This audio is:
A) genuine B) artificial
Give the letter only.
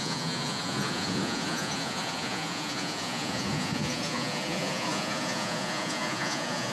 B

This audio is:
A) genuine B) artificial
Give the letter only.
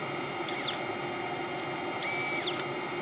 A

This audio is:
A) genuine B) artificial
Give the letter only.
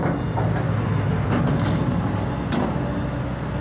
A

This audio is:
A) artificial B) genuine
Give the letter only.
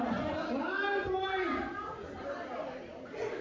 B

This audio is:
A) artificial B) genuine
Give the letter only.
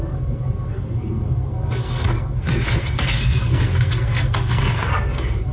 A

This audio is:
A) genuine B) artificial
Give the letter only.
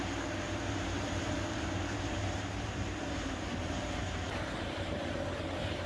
B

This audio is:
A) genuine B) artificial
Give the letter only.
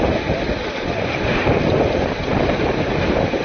A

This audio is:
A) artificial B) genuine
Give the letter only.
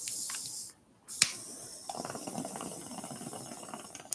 B